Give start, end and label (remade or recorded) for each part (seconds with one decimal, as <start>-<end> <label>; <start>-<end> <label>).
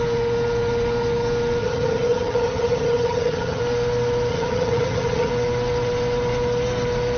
0.0-1.6 recorded; 1.6-3.6 remade; 3.6-4.3 recorded; 4.3-5.3 remade; 5.3-7.2 recorded